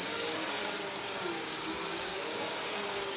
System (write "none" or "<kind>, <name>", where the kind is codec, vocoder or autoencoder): codec, DAC